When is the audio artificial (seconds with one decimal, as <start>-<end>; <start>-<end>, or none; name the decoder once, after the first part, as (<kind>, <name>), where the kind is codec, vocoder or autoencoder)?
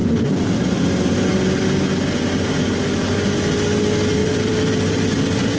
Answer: 0.0-0.6 (vocoder, BigVGAN v2); 4.2-5.6